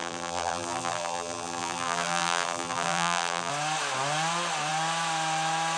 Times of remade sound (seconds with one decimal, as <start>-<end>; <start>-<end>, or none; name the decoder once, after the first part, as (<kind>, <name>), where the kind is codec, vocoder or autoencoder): 0.0-3.5 (vocoder, BigVGAN v2)